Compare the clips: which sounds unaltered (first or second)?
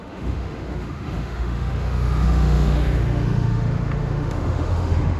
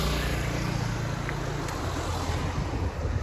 second